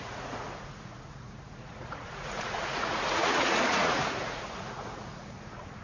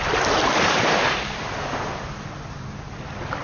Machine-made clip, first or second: first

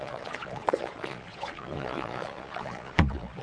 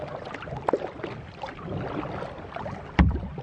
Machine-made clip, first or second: first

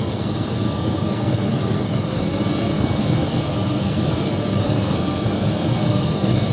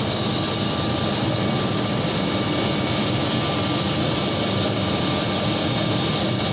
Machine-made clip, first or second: first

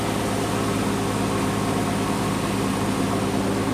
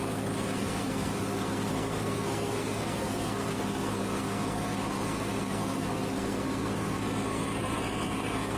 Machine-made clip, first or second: second